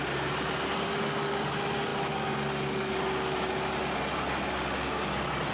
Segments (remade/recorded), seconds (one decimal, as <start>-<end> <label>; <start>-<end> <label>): 0.0-5.5 recorded